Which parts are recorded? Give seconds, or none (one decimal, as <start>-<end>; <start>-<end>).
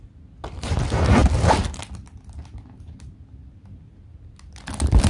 0.0-5.1